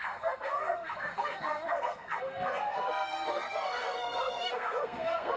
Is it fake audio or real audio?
fake